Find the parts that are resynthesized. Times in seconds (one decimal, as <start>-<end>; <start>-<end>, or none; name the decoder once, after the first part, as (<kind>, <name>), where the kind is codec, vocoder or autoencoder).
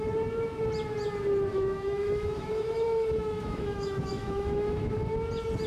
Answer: 1.5-4.9 (autoencoder, DAC-VAE)